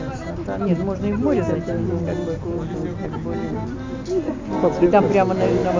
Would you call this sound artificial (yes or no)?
no